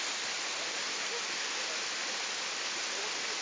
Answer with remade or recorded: recorded